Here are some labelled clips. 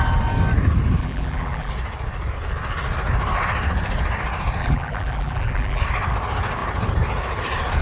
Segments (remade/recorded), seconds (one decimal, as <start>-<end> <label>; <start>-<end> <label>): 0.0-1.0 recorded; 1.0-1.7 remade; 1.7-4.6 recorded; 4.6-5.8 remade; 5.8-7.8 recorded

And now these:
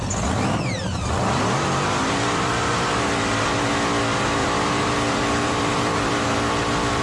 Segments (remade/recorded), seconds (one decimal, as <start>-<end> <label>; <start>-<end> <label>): 0.0-0.9 recorded; 0.9-3.7 remade; 3.7-4.4 recorded; 4.4-6.4 remade; 6.4-7.0 recorded

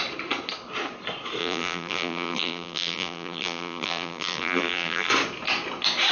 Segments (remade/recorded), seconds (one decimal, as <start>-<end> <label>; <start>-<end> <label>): 0.0-1.4 recorded; 1.4-5.1 remade; 5.1-6.1 recorded

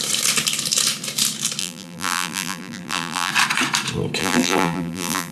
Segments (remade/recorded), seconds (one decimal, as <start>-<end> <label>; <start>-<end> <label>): 0.0-1.6 recorded; 1.6-3.3 remade; 3.3-4.2 recorded; 4.2-5.3 remade

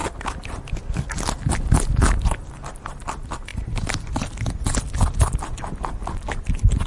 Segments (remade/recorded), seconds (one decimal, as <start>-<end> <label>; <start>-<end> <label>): 0.0-6.9 recorded

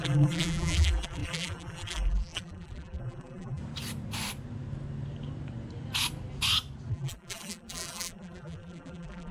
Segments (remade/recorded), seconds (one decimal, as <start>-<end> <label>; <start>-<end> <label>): 0.0-3.6 remade; 3.6-6.9 recorded; 6.9-9.3 remade